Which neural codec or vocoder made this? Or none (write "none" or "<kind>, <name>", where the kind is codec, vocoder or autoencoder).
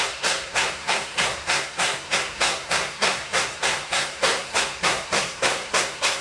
codec, SNAC